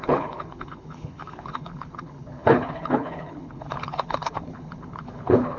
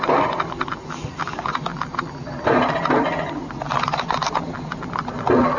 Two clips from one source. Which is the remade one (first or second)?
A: first